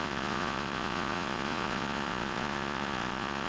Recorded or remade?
remade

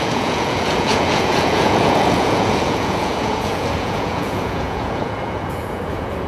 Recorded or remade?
remade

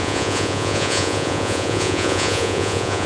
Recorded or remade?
remade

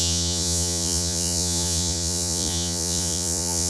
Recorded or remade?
remade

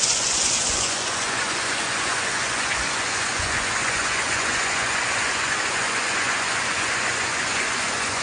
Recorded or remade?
remade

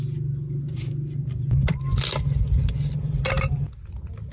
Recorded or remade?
recorded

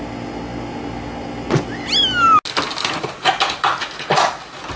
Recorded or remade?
recorded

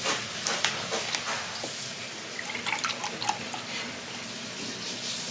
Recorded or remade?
recorded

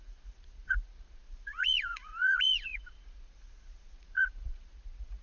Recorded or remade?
remade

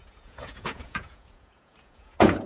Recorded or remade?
remade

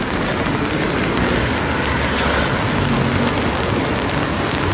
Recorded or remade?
recorded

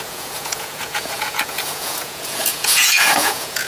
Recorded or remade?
remade